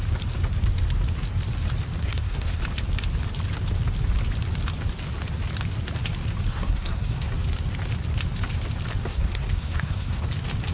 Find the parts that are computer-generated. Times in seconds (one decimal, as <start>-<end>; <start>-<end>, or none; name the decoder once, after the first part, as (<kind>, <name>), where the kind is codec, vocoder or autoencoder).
2.0-2.6 (codec, SNAC); 6.5-7.3; 9.1-10.2